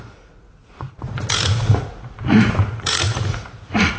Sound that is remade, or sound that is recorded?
remade